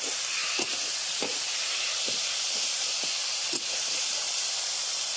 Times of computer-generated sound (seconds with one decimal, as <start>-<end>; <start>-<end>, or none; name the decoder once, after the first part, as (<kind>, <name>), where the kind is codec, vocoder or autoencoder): 0.4-2.5 (vocoder, BigVGAN v2); 3.2-5.2